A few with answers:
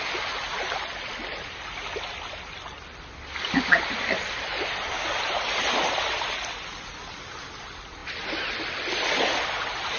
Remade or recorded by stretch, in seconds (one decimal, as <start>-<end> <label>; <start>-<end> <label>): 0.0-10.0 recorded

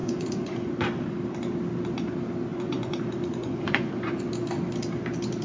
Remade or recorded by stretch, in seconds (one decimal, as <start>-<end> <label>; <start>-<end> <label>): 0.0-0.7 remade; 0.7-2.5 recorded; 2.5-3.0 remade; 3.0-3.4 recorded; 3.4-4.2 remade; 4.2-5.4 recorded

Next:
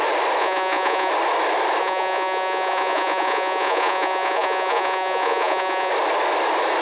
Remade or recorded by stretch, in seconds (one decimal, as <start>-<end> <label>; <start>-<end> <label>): 0.0-0.4 recorded; 0.4-1.1 remade; 1.1-1.8 recorded; 1.8-5.9 remade; 5.9-6.8 recorded

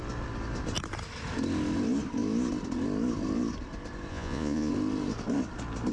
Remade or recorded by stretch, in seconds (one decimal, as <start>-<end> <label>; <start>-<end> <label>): 0.0-4.1 recorded; 4.1-4.7 remade; 4.7-5.9 recorded